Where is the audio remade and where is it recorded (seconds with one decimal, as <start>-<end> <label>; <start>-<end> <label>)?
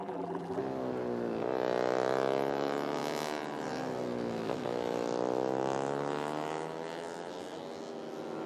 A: 0.0-0.6 remade; 0.6-8.5 recorded